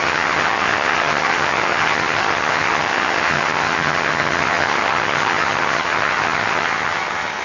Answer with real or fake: fake